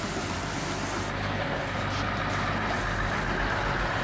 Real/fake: real